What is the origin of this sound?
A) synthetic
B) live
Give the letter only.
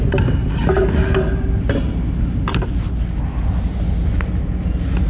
B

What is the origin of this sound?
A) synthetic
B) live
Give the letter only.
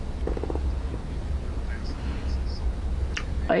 B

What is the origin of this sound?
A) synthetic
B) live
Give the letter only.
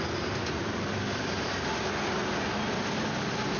B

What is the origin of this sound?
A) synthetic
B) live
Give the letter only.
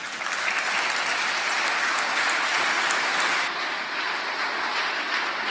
B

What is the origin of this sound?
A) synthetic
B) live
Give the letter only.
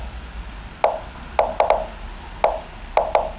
B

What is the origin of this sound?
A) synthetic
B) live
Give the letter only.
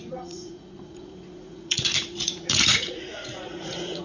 A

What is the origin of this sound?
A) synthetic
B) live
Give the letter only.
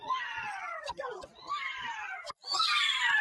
A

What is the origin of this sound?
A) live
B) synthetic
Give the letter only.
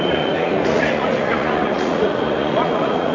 B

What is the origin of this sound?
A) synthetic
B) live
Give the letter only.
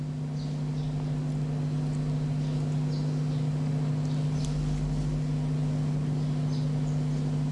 B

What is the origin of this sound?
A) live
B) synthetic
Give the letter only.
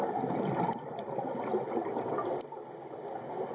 A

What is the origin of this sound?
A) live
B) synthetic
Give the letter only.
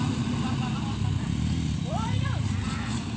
A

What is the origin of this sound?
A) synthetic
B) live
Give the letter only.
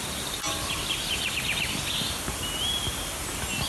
B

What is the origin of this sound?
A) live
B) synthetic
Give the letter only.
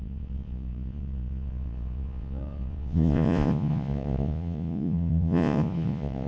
B